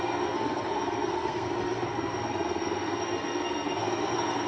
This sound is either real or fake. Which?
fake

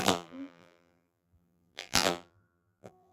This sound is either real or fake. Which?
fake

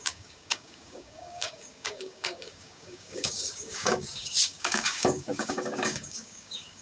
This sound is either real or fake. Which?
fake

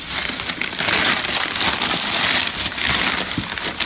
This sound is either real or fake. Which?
real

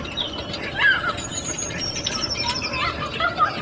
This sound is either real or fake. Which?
fake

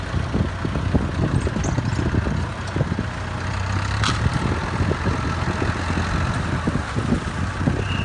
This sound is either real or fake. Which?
real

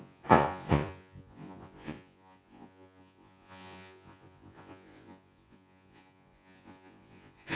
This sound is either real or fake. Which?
fake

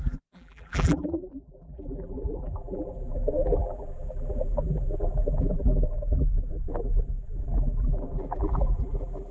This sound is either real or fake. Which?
fake